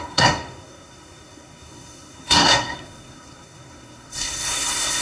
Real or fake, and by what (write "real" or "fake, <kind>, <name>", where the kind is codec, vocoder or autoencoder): fake, codec, SNAC